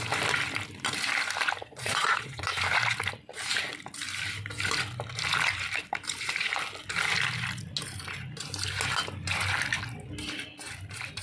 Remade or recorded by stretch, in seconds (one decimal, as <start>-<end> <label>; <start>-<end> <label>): 0.0-1.6 recorded; 1.6-2.4 remade; 2.4-11.2 recorded